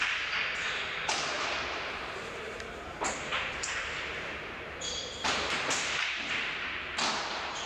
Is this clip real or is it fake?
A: fake